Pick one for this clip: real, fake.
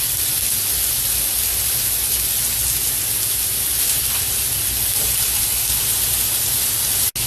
real